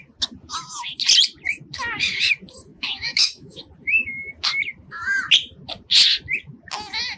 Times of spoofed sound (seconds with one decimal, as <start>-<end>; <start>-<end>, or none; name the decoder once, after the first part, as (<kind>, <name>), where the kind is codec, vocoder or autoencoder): 2.7-3.6 (autoencoder, DAC-VAE)